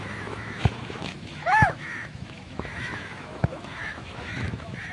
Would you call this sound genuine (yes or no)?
no